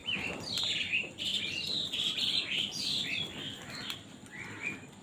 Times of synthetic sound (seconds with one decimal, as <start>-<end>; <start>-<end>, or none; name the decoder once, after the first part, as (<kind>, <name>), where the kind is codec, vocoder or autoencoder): 0.8-5.0 (vocoder, BigVGAN v2)